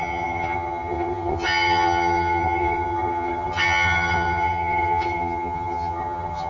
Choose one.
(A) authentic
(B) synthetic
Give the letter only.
B